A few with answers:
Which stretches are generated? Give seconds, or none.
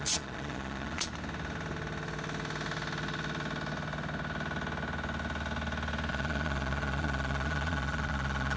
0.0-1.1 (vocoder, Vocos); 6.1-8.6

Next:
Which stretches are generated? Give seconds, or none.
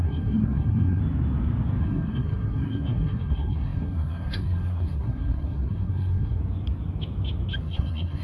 0.0-1.0 (codec, SNAC); 1.8-6.4; 7.6-8.2